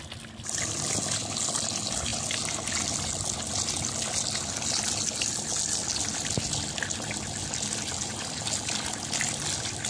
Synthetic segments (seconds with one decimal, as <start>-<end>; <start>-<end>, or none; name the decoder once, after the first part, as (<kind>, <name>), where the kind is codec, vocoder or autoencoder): none